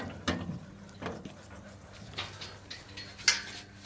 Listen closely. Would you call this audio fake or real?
real